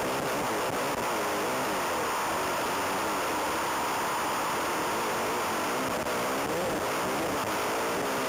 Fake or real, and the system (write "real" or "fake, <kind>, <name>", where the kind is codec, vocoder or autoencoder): real